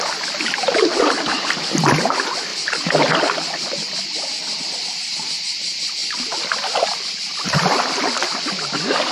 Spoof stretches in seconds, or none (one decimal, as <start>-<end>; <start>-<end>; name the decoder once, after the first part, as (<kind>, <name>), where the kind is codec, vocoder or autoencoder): none